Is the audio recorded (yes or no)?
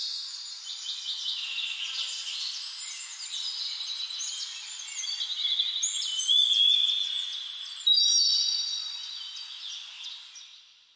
yes